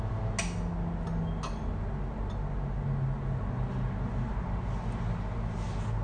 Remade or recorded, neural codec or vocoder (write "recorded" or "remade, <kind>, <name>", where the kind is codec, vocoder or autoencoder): recorded